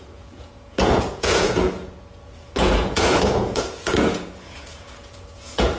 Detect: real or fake fake